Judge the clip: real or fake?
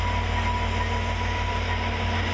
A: real